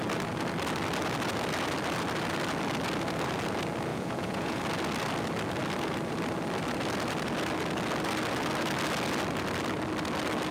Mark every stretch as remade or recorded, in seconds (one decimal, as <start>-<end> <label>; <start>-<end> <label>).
0.0-3.9 recorded; 3.9-4.6 remade; 4.6-10.5 recorded